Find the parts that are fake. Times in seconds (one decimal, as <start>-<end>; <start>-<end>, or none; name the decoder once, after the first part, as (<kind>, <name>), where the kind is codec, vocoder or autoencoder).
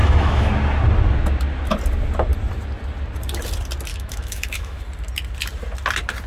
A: 0.0-0.5 (autoencoder, DAC-VAE); 3.9-4.8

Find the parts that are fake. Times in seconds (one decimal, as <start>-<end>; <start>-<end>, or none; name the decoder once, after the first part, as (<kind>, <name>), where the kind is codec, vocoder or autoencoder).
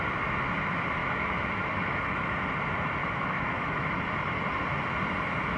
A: 1.0-2.3 (autoencoder, DAC-VAE); 3.0-3.8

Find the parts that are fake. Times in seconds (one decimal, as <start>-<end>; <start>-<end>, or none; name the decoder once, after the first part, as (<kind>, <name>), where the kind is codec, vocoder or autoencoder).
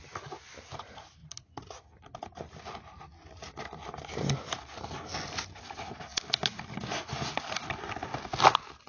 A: none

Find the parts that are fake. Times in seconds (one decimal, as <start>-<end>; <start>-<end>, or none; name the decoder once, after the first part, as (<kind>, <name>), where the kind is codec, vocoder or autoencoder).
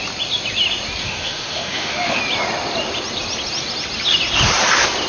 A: 1.0-2.2 (autoencoder, DAC-VAE)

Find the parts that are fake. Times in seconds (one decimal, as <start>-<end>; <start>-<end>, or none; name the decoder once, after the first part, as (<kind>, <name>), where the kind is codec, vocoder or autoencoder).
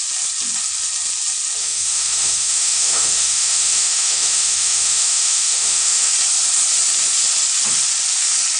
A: 1.6-6.1 (autoencoder, DAC-VAE)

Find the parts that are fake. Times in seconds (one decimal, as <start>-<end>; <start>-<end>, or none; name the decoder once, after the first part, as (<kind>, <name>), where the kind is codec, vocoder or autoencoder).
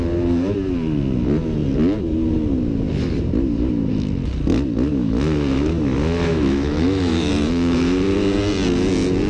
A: 6.3-7.3 (autoencoder, DAC-VAE)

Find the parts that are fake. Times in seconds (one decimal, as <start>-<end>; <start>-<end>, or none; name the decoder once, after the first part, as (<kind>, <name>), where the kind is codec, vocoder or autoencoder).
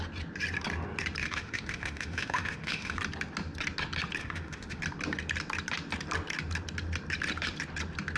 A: 1.2-3.0 (autoencoder, DAC-VAE); 4.2-4.8